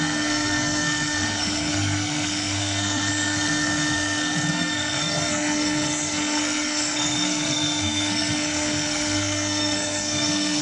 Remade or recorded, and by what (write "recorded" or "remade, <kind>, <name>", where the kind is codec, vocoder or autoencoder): remade, codec, SNAC